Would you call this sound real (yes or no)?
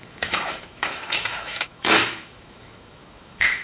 no